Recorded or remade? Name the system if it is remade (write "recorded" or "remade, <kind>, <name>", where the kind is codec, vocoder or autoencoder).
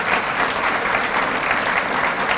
recorded